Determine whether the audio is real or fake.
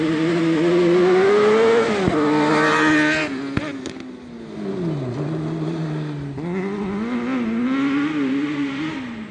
real